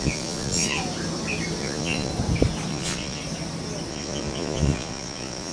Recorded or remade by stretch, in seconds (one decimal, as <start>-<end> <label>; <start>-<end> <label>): 0.0-0.8 remade; 0.8-1.6 recorded; 1.6-2.1 remade; 2.1-2.7 recorded; 2.7-3.2 remade; 3.2-3.9 recorded; 3.9-5.5 remade